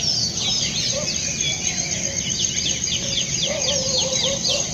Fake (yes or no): no